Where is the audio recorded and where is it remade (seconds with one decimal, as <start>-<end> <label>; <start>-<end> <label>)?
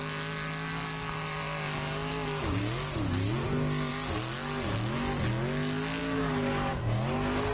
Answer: 0.0-6.0 recorded; 6.0-6.7 remade; 6.7-7.5 recorded